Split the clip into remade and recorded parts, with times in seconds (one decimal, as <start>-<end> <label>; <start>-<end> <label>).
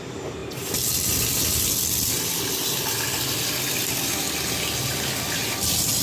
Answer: 0.0-6.0 recorded